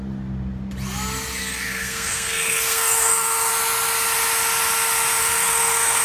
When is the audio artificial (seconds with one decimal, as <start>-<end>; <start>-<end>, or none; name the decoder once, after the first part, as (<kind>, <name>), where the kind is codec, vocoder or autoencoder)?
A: 1.4-3.5 (codec, SNAC); 5.2-6.0

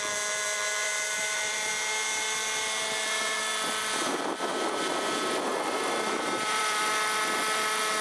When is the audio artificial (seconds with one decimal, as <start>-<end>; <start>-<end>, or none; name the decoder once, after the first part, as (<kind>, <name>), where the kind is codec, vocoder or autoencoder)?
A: 0.8-1.7 (vocoder, BigVGAN v2); 5.5-6.8

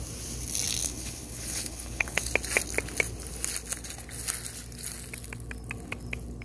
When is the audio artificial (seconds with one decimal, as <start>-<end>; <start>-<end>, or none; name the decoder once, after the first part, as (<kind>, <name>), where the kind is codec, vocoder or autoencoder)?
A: 0.8-2.3 (codec, HILCodec)

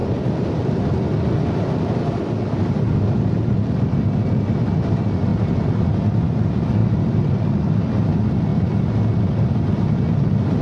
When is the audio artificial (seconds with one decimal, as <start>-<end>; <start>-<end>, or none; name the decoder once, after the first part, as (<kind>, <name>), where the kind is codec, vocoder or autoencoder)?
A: 5.3-5.9 (vocoder, BigVGAN v2); 6.8-7.7

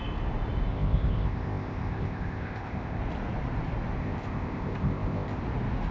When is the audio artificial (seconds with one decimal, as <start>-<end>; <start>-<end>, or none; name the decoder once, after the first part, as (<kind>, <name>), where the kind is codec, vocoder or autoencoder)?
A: 0.7-3.0 (codec, ZipCodec); 4.0-5.4

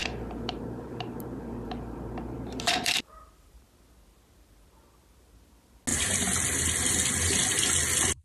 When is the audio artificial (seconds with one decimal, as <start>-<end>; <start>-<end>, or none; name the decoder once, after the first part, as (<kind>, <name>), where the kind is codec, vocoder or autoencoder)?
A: 0.0-3.6 (vocoder, BigVGAN v2)

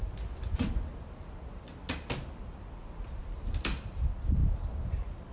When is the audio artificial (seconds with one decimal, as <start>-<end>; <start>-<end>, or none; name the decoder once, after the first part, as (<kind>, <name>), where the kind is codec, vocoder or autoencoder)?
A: 2.5-4.4 (vocoder, BigVGAN v2)